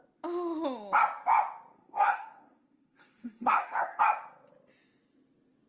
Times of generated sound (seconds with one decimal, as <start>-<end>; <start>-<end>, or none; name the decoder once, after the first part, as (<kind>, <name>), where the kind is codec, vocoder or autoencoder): 1.7-4.0 (codec, SNAC)